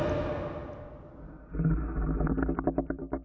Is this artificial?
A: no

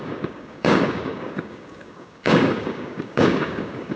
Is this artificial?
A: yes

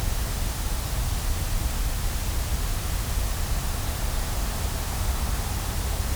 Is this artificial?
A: no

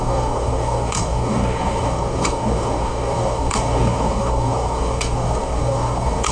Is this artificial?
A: yes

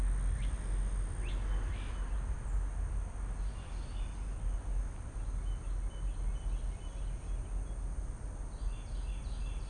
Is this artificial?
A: no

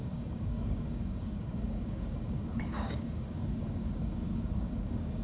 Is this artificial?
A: yes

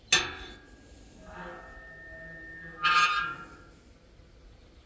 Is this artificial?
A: no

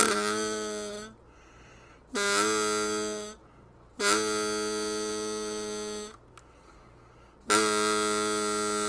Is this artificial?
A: no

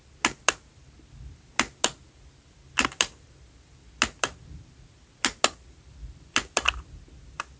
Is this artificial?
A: no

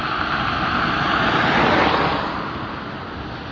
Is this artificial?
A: no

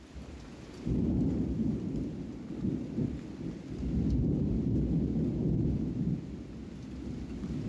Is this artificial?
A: no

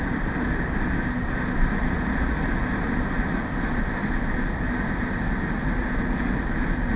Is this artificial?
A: no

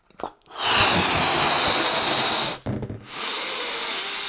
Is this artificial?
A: no